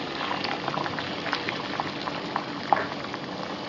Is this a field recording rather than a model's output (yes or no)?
yes